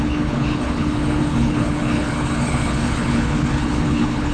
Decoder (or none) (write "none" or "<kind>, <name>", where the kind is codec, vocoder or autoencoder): codec, HILCodec